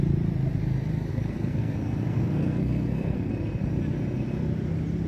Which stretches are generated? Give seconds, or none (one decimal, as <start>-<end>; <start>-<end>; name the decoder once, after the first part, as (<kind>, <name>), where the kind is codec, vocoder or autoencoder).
1.1-3.3 (codec, SNAC)